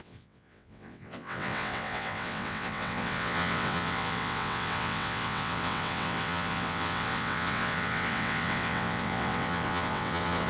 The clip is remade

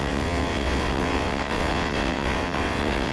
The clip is remade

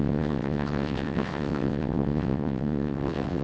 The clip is remade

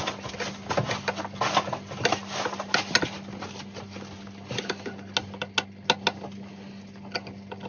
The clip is recorded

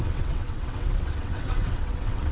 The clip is remade